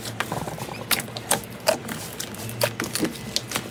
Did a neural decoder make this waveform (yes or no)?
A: no